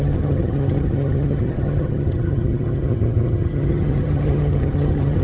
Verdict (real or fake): fake